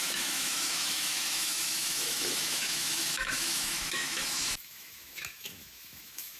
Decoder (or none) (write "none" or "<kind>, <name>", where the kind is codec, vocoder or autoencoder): autoencoder, DAC-VAE